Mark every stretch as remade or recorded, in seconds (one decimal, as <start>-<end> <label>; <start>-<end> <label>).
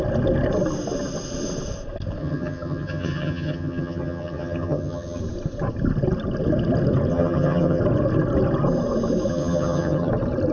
0.0-2.2 recorded; 2.2-5.2 remade; 5.2-7.1 recorded; 7.1-7.8 remade; 7.8-9.3 recorded; 9.3-10.1 remade; 10.1-10.5 recorded